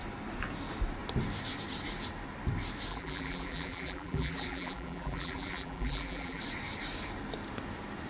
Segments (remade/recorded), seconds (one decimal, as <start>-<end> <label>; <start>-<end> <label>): 0.0-2.9 recorded; 2.9-6.4 remade; 6.4-8.1 recorded

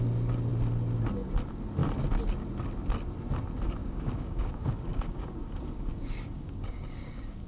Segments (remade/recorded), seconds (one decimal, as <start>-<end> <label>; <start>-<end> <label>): 0.0-3.8 recorded; 3.8-7.5 remade